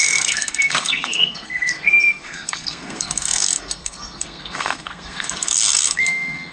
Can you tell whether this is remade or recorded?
remade